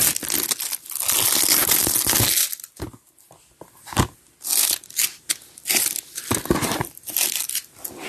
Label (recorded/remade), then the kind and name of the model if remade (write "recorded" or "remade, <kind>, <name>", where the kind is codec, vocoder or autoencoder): recorded